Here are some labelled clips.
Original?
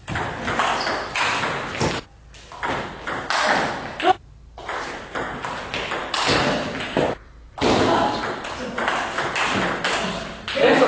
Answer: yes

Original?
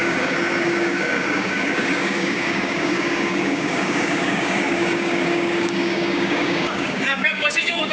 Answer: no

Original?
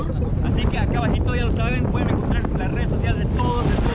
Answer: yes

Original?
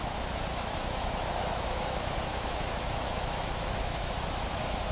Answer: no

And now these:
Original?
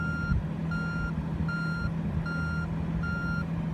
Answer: yes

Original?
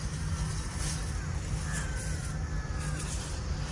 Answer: yes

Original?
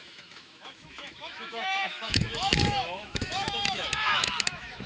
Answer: no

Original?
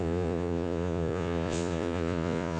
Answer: no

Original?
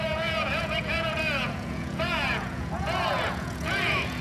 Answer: no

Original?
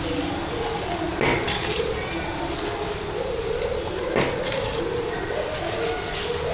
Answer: yes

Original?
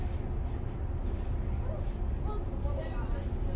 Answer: yes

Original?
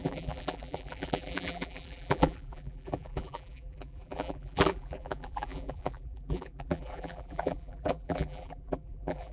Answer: no